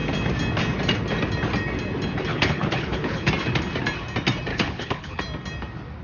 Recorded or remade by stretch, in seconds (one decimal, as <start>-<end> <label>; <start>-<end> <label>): 0.0-2.3 recorded; 2.3-3.3 remade; 3.3-4.5 recorded; 4.5-5.2 remade; 5.2-6.0 recorded